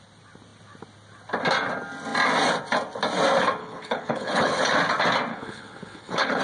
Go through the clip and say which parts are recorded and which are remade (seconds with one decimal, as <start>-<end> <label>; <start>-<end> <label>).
0.0-3.6 recorded; 3.6-4.6 remade; 4.6-5.3 recorded; 5.3-6.4 remade